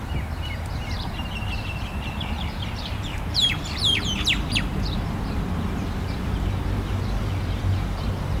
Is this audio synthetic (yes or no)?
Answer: yes